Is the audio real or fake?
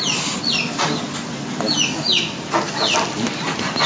real